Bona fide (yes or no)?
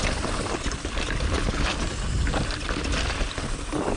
yes